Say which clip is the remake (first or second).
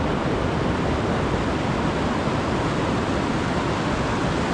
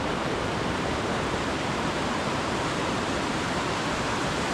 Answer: second